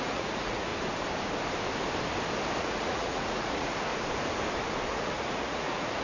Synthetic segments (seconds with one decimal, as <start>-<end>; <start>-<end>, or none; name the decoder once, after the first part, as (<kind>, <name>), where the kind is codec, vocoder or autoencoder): 0.0-0.7 (vocoder, Vocos); 2.6-3.9; 4.9-6.0